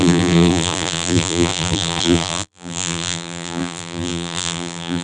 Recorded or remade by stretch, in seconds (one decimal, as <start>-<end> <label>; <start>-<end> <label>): 0.0-5.0 remade